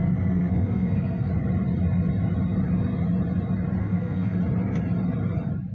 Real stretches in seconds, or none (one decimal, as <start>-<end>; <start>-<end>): 1.3-3.8; 4.4-5.7